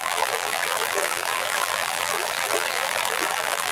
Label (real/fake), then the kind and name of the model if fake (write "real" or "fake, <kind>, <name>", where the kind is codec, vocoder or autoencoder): fake, vocoder, BigVGAN v2